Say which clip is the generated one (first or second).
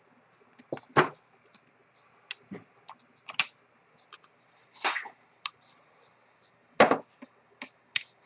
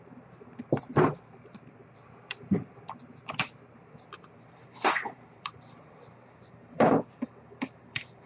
second